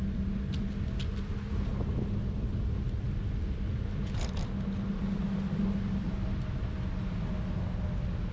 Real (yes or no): yes